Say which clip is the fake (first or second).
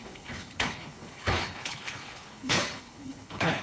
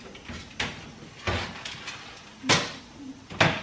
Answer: first